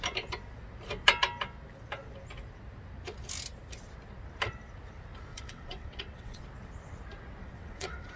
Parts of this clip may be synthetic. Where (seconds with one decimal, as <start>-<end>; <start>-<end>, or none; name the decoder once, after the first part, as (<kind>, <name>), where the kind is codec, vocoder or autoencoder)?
5.3-6.4 (vocoder, WaveNeXt); 7.4-8.2